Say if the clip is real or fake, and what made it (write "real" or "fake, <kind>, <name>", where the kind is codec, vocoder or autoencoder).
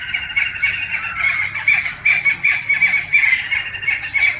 real